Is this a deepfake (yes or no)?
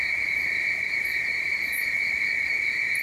no